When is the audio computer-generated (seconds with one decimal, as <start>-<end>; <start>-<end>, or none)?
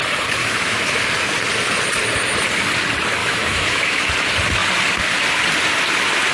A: 0.4-1.0; 3.2-4.1